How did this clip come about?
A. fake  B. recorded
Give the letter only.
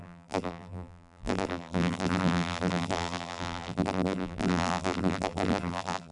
A